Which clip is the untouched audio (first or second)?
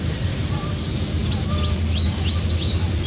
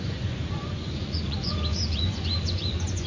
first